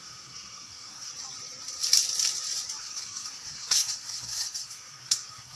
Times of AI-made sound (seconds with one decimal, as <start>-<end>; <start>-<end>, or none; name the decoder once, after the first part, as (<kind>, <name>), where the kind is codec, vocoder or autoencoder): 0.0-1.1 (codec, SNAC); 2.8-5.6

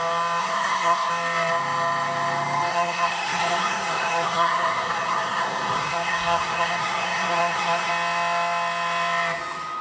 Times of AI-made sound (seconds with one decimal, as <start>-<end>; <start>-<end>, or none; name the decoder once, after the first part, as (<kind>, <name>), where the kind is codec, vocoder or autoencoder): 0.4-1.1 (codec, SNAC); 2.7-7.9

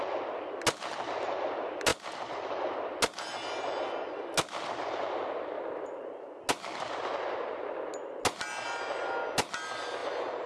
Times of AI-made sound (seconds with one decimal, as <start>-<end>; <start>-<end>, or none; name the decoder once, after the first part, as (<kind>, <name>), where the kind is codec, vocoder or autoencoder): none

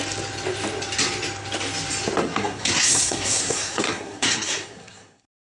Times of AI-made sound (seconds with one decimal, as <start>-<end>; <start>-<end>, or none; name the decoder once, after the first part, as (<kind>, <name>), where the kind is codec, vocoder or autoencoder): 2.2-5.5 (codec, SNAC)

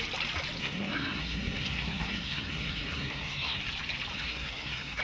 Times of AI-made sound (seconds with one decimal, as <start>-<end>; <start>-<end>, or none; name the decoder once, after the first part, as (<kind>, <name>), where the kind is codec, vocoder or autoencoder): 0.6-3.6 (codec, SNAC); 4.1-5.0

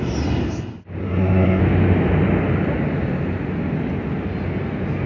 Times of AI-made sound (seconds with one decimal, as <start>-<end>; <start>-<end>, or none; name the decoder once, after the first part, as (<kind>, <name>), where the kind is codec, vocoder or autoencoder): 1.0-1.6 (codec, SNAC)

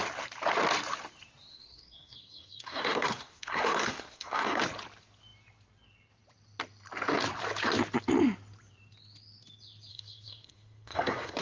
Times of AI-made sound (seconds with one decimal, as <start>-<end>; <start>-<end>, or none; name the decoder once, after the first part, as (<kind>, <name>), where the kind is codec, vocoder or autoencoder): 1.5-4.6 (codec, SNAC); 9.9-11.4